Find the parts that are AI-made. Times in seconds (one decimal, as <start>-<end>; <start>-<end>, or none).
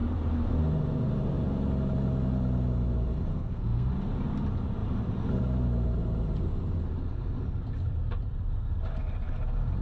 3.3-3.9